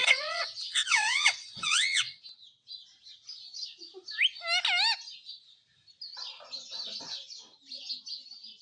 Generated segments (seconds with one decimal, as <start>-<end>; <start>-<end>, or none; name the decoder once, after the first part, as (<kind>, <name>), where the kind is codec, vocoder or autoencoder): 0.0-2.2 (vocoder, WaveNeXt)